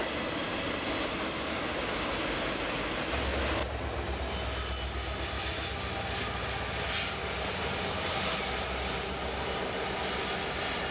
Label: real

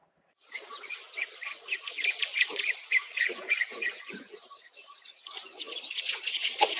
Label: fake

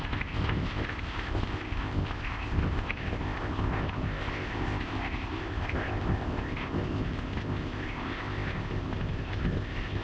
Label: fake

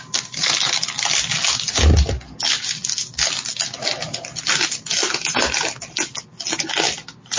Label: real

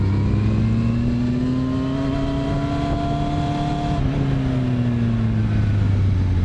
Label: real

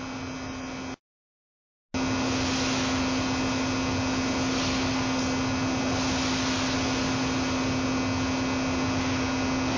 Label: real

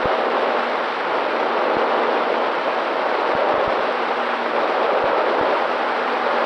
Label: real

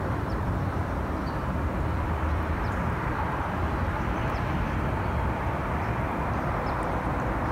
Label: fake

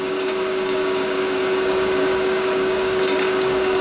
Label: fake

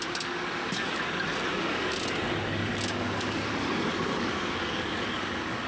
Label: fake